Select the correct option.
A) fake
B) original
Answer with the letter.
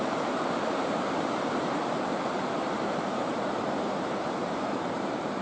A